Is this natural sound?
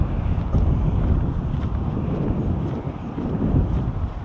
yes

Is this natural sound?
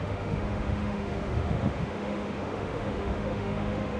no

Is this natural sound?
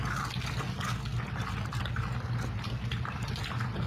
yes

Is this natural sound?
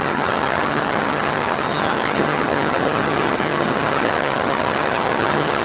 no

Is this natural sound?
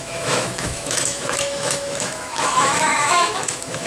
no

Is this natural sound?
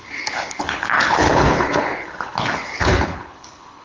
no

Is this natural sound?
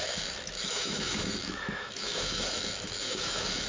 no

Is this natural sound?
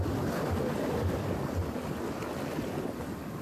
yes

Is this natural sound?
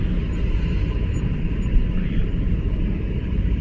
no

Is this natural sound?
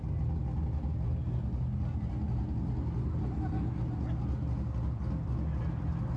yes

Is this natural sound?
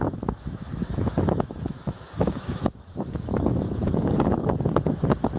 no